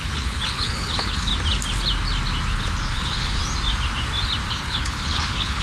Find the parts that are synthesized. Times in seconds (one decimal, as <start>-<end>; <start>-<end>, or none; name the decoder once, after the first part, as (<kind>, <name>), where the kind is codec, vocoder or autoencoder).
0.0-1.3 (codec, HILCodec); 2.5-3.4; 4.5-5.6